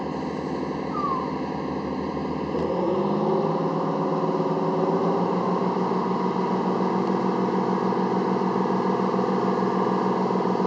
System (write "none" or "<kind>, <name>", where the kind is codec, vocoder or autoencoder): none